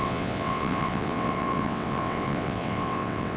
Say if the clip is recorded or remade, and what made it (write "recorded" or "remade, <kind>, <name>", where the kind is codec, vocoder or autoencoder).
remade, vocoder, WaveNeXt